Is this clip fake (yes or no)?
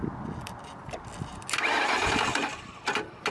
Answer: no